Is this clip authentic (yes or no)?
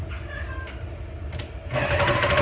yes